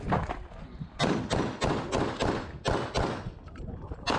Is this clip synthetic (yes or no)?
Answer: no